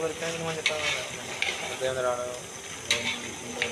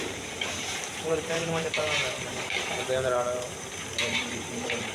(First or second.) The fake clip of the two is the second